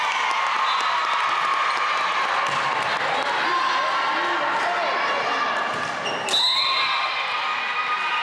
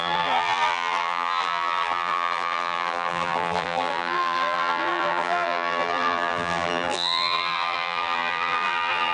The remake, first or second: second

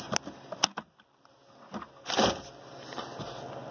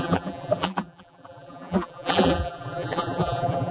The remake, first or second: second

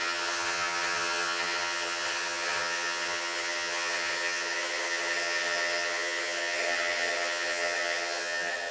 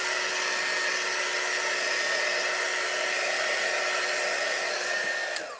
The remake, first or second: first